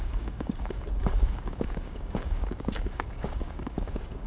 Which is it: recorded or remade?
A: remade